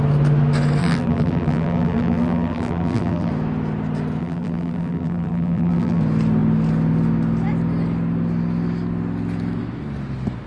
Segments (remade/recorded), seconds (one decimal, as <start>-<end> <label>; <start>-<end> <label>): 0.0-0.8 recorded; 0.8-3.3 remade; 3.3-4.2 recorded; 4.2-6.0 remade; 6.0-10.5 recorded